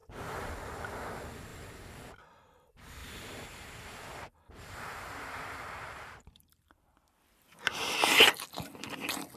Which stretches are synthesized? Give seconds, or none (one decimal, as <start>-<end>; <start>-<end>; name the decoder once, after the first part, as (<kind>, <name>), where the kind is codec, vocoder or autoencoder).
0.0-0.5 (vocoder, BigVGAN v2); 1.5-2.2; 3.0-6.9

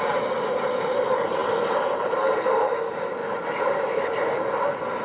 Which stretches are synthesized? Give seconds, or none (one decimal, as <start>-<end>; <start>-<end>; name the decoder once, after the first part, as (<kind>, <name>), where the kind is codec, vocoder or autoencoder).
none

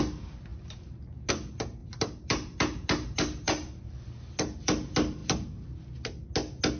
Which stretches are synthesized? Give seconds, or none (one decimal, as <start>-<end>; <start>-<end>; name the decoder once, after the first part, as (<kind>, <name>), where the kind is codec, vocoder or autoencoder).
0.5-1.3 (vocoder, BigVGAN v2); 1.8-3.8

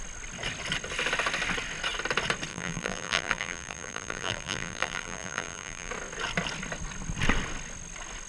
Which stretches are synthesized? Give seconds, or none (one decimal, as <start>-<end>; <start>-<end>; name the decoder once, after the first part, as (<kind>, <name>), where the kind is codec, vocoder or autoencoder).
2.5-5.9 (vocoder, BigVGAN v2)

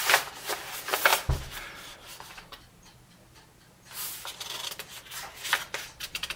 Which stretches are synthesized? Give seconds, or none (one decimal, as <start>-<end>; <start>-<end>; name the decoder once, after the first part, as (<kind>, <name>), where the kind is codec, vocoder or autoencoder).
1.1-1.9 (vocoder, BigVGAN v2)

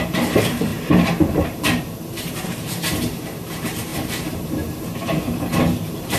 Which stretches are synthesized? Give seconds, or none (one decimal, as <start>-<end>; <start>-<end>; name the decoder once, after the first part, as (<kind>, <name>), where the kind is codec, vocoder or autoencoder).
0.0-6.2 (vocoder, BigVGAN v2)